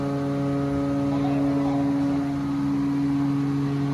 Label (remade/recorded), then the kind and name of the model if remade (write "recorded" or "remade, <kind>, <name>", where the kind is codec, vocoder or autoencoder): recorded